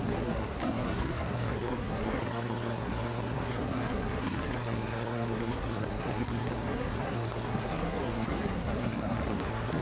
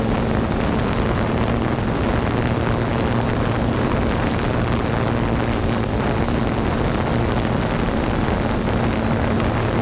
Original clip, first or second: second